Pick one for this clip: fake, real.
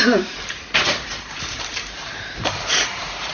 fake